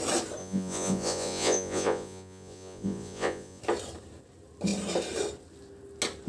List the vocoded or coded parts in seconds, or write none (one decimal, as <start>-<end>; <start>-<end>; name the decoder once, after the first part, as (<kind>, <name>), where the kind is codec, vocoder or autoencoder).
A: 0.4-3.6 (vocoder, Vocos)